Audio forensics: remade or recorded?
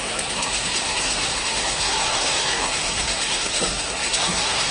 remade